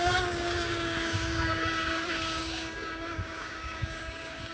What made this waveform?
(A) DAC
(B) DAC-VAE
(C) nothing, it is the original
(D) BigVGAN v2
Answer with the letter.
A